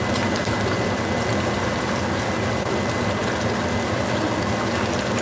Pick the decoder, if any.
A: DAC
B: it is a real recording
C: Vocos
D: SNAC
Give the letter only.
B